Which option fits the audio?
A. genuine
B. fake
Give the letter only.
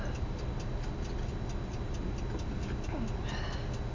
A